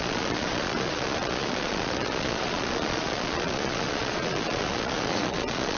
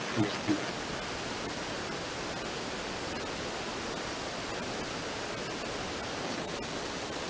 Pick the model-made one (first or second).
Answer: first